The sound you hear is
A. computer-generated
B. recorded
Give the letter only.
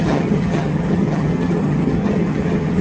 A